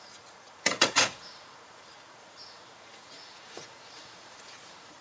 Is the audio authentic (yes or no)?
no